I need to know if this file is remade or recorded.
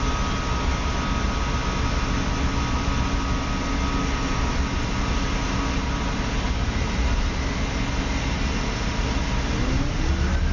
recorded